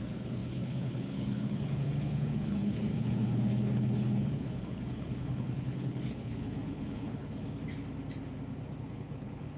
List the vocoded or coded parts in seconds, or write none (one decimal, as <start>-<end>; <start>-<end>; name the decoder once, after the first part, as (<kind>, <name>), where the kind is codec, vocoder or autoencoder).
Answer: 0.0-7.4 (codec, HILCodec); 8.8-9.6

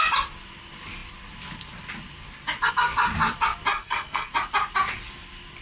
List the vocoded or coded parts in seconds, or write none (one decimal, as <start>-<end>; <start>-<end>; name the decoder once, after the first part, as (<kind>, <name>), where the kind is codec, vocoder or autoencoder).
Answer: 3.7-4.3 (codec, SNAC)

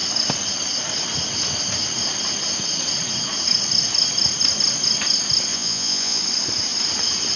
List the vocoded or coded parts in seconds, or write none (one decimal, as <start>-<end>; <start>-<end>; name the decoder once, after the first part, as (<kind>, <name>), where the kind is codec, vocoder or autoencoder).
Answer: 5.5-6.2 (vocoder, Vocos)